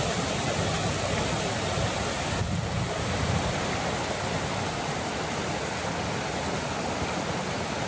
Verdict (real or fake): real